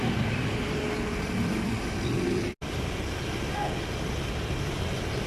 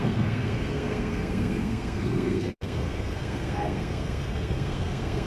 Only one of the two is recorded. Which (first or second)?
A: first